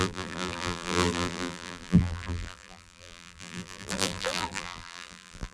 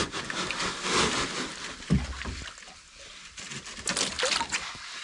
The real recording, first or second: second